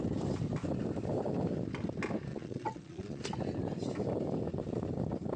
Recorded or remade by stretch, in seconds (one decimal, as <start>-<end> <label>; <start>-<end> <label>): 0.0-2.3 recorded; 2.3-3.2 remade; 3.2-5.4 recorded